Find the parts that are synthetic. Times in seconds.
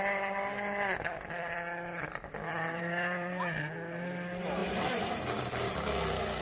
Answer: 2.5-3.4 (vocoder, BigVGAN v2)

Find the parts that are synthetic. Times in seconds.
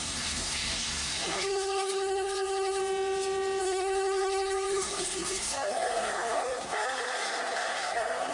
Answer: 0.0-2.8 (codec, SNAC); 3.6-8.3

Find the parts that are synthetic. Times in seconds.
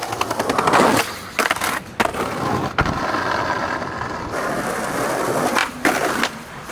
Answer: 2.1-4.2 (vocoder, BigVGAN v2); 5.6-6.7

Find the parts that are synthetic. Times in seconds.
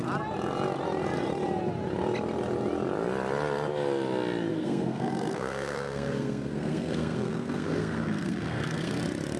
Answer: 4.5-9.0 (codec, SNAC)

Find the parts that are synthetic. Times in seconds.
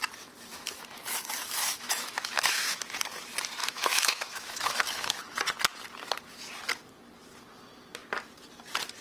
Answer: 0.5-2.8 (autoencoder, DAC-VAE); 3.6-5.2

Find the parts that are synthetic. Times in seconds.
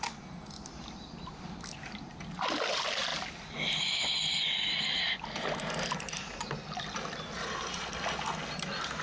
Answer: none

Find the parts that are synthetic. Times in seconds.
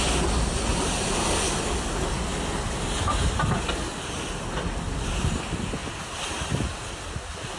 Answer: 0.7-1.3 (vocoder, BigVGAN v2); 5.8-7.1